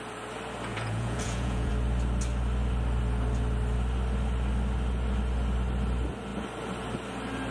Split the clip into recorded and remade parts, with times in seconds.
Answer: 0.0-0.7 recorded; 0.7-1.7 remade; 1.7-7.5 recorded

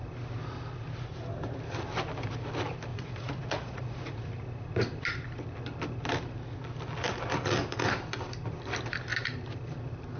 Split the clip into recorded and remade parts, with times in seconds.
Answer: 0.0-2.9 recorded; 2.9-4.2 remade; 4.2-10.2 recorded

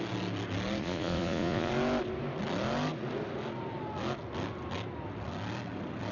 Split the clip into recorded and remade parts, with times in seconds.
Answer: 0.0-0.8 recorded; 0.8-1.7 remade; 1.7-6.1 recorded

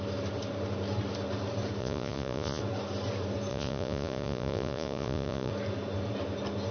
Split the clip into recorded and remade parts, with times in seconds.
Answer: 0.0-1.8 recorded; 1.8-2.6 remade; 2.6-3.5 recorded; 3.5-5.5 remade; 5.5-6.7 recorded

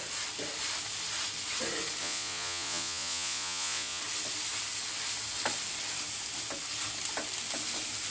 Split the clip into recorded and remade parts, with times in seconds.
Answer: 0.0-2.0 recorded; 2.0-4.0 remade; 4.0-8.1 recorded

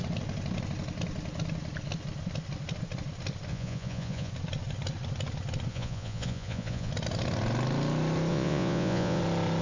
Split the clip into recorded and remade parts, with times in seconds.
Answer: 0.0-3.5 recorded; 3.5-4.3 remade; 4.3-5.7 recorded; 5.7-6.9 remade; 6.9-8.3 recorded; 8.3-9.2 remade; 9.2-9.6 recorded